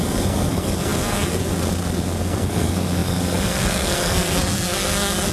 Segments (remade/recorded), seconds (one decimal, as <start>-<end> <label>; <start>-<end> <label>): 0.0-5.3 remade